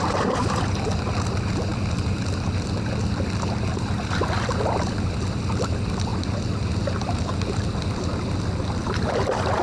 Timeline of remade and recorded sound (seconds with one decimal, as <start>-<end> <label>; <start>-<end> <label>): 0.0-1.7 recorded; 1.7-2.7 remade; 2.7-9.6 recorded